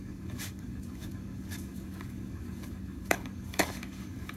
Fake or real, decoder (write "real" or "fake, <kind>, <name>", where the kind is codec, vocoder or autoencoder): fake, codec, DAC